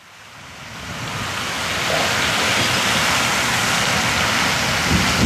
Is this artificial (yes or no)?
no